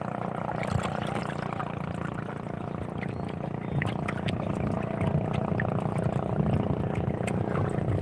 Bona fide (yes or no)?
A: yes